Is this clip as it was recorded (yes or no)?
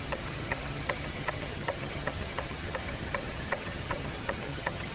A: no